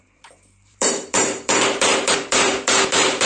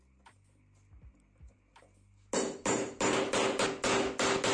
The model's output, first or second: first